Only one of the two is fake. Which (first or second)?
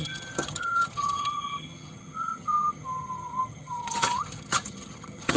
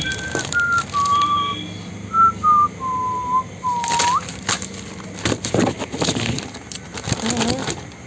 first